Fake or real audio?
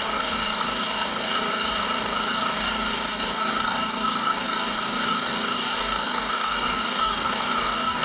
fake